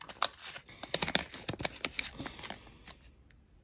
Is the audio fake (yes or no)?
no